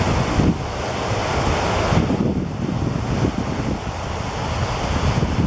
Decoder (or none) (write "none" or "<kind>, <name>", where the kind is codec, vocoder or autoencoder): none